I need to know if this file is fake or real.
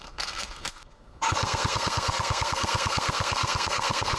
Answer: fake